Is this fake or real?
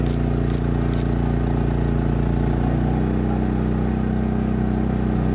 real